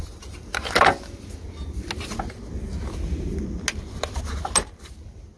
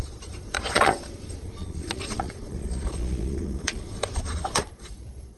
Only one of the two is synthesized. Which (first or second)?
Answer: second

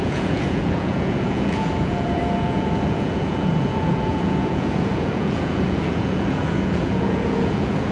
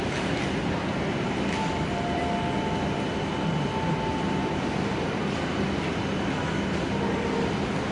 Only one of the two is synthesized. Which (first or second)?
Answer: first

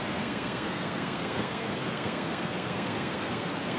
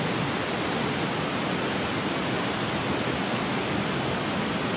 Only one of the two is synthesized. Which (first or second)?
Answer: first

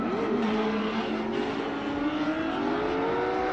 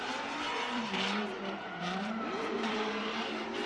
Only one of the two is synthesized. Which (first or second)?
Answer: second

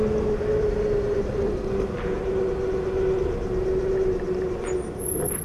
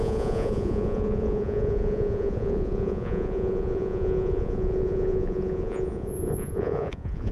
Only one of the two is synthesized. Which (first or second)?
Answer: second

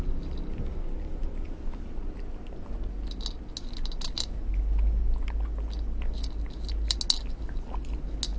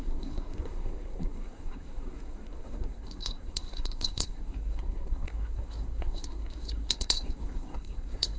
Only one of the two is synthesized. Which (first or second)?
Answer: second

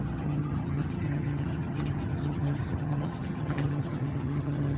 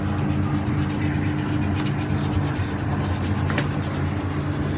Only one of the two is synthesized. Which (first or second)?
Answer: first